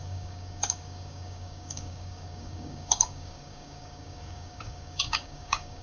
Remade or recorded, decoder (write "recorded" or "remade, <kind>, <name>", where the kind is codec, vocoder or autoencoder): remade, codec, DAC